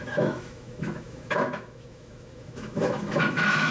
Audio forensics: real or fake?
fake